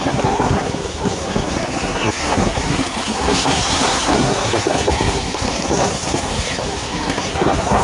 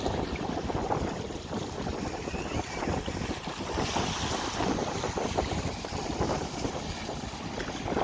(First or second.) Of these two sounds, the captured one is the second